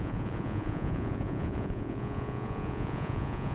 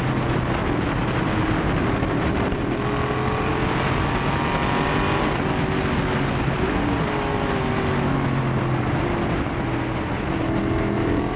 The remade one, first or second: first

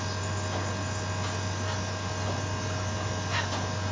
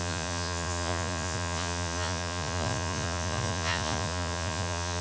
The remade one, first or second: second